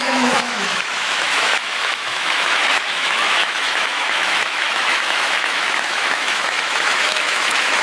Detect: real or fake fake